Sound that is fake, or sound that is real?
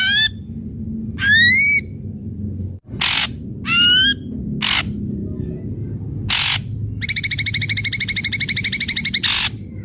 real